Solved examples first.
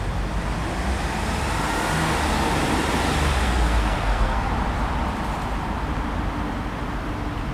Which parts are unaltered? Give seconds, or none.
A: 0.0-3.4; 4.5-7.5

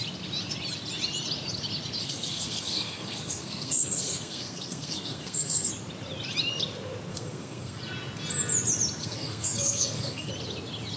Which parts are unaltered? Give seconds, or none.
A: 0.0-2.0; 5.7-7.1; 7.8-9.0; 10.3-11.0

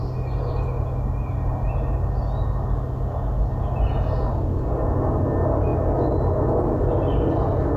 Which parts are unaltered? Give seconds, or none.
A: 0.0-7.8

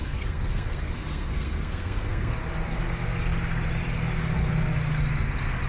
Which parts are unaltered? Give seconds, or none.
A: 2.3-5.7

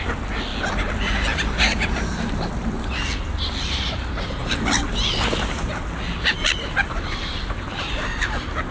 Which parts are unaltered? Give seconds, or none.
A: 0.0-8.7